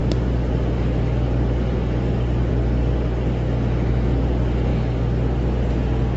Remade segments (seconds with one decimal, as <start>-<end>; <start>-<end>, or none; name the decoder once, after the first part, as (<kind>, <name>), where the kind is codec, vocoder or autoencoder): 0.0-4.7 (vocoder, BigVGAN v2); 5.7-6.2